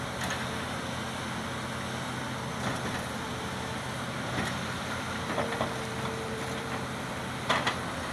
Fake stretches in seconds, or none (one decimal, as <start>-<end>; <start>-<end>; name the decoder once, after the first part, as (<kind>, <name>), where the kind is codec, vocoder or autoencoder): 2.5-7.2 (vocoder, BigVGAN v2)